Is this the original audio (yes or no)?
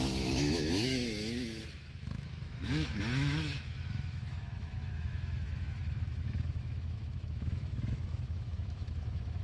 no